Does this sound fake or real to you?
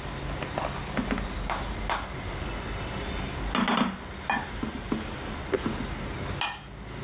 real